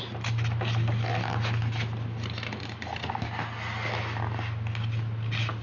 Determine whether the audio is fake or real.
real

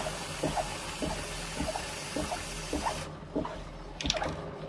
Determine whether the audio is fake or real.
real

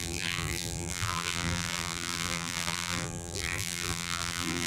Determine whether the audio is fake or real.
fake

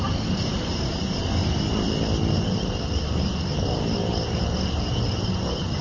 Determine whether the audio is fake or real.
real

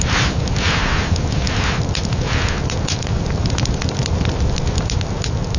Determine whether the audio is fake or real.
real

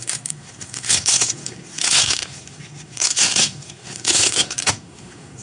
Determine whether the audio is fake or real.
fake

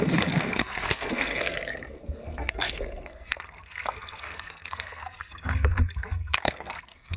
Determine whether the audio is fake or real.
fake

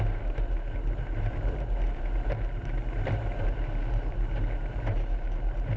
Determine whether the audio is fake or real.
fake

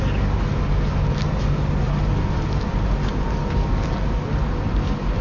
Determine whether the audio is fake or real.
real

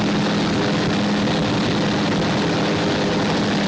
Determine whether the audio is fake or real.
real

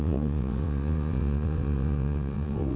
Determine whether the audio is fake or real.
fake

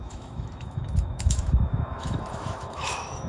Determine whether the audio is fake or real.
fake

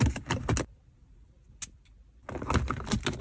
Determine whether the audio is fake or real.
real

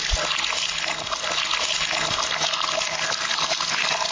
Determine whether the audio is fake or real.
real